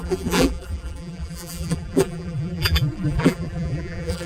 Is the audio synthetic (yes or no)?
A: yes